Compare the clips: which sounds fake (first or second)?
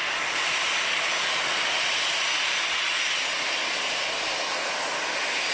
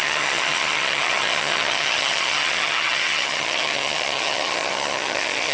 second